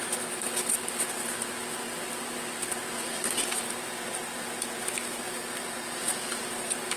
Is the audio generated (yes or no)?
no